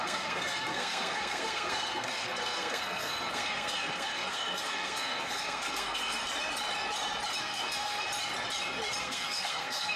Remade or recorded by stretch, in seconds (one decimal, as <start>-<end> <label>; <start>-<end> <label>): 0.0-6.2 remade; 6.2-7.4 recorded; 7.4-8.1 remade; 8.1-9.0 recorded; 9.0-10.0 remade